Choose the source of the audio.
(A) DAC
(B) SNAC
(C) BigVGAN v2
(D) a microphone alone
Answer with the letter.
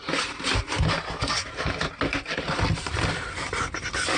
D